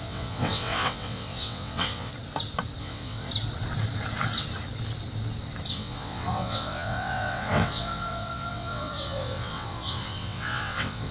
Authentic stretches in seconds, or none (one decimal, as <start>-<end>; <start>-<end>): 2.1-2.8; 3.3-5.7